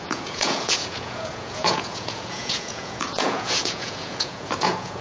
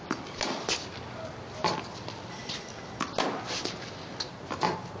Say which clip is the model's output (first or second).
first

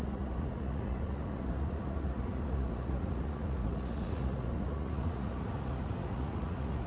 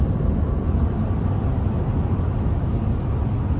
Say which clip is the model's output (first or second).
first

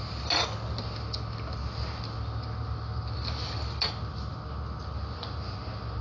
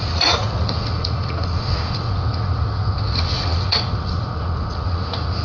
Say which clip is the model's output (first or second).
second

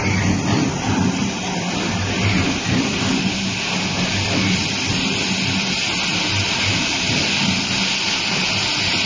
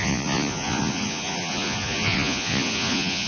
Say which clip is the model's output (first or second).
second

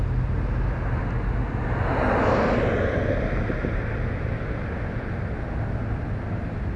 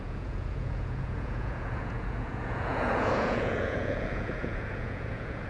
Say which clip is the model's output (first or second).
second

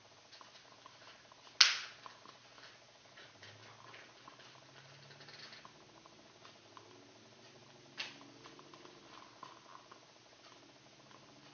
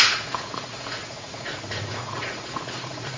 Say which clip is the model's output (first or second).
second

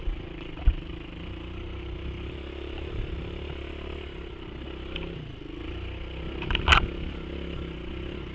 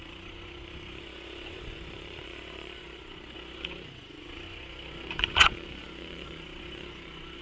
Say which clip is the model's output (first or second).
second